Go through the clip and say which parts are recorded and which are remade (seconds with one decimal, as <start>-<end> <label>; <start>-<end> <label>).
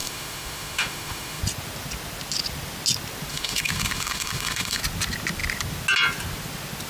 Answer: 0.0-1.4 remade; 1.4-3.3 recorded; 3.3-4.8 remade; 4.8-6.9 recorded